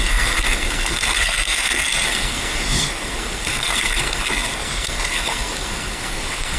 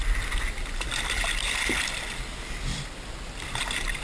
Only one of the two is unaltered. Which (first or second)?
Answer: second